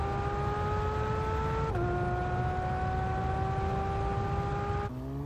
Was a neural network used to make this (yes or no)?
no